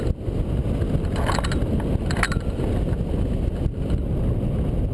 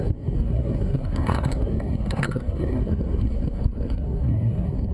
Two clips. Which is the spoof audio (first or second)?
second